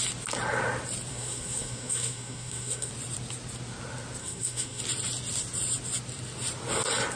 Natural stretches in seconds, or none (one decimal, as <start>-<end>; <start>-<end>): 0.0-1.1; 2.9-4.2; 4.8-7.2